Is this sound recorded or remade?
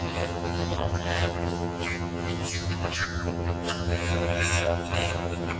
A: remade